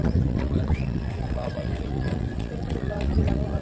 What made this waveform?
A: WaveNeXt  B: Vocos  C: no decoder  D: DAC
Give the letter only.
A